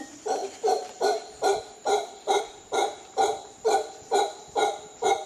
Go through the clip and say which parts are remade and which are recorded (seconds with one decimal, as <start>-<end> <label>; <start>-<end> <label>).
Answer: 0.0-0.4 recorded; 0.4-2.4 remade; 2.4-5.3 recorded